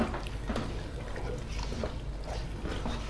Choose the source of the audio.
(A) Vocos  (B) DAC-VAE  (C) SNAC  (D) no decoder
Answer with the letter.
D